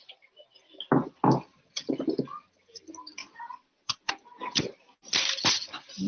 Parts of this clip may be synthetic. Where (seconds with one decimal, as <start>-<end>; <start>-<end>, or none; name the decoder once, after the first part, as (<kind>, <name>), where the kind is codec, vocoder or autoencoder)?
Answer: 3.2-4.1 (vocoder, Vocos)

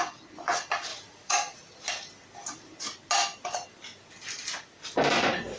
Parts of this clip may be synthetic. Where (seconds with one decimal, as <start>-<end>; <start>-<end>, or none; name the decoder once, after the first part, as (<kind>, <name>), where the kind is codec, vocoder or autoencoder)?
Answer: 0.9-1.8 (vocoder, Vocos)

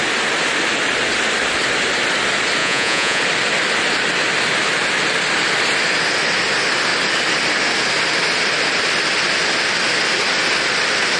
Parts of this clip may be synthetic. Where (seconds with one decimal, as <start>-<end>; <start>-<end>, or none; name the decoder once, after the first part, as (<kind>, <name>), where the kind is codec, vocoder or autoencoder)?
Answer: 2.6-3.2 (vocoder, Vocos)

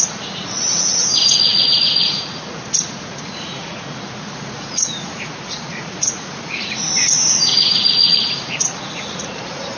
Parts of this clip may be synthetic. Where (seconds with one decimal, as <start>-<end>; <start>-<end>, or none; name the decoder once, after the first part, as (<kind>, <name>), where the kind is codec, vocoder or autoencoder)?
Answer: 0.0-9.8 (vocoder, Vocos)

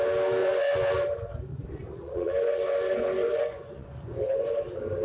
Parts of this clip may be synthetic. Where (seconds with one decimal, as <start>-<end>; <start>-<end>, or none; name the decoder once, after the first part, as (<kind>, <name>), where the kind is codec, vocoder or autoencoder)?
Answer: 0.4-0.9 (vocoder, Vocos); 1.5-4.5

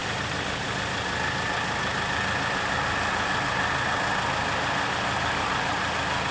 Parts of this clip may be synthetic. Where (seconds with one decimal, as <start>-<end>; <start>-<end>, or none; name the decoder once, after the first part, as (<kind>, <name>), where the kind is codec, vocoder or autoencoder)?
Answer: none

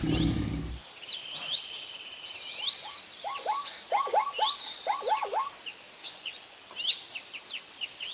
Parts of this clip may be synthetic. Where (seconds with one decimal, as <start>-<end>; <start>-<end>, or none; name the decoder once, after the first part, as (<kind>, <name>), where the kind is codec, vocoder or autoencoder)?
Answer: 6.0-6.6 (vocoder, Vocos)

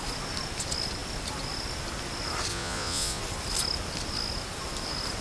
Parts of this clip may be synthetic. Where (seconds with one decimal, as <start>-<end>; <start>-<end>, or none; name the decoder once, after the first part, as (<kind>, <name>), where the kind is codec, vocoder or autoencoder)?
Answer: 2.5-3.2 (vocoder, Vocos)